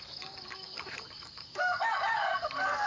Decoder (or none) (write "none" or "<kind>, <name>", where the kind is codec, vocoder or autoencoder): codec, DAC